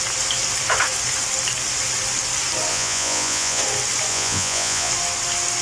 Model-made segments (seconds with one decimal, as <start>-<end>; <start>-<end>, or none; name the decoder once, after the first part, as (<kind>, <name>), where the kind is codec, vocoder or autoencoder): 2.7-3.6 (vocoder, Vocos); 4.1-4.9